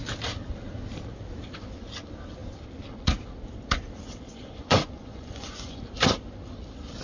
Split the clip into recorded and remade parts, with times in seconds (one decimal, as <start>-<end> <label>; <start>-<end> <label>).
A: 0.0-4.3 recorded; 4.3-5.8 remade; 5.8-7.0 recorded